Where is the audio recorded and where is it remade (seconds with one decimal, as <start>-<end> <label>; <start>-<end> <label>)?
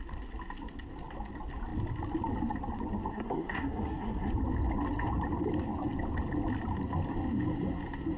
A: 0.0-3.1 recorded; 3.1-4.3 remade; 4.3-8.2 recorded